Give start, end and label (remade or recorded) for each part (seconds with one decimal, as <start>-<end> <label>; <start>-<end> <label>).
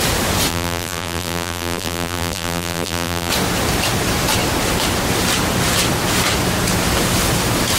0.0-0.5 recorded; 0.5-3.3 remade; 3.3-7.8 recorded